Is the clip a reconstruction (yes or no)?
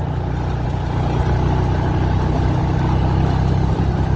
no